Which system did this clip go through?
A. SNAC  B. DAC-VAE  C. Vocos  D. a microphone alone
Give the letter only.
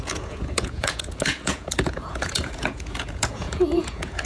C